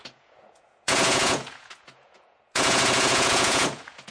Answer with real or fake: fake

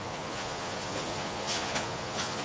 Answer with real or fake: fake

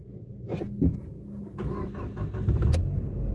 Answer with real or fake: real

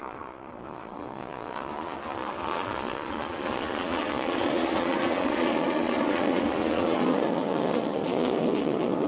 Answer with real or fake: fake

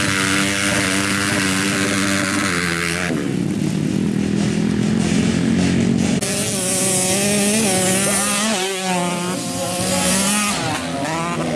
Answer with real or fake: real